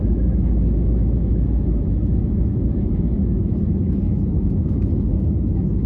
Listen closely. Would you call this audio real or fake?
fake